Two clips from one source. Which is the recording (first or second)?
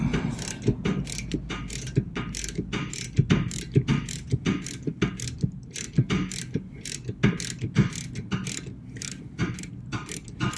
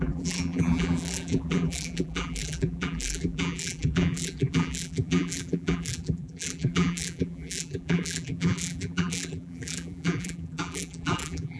first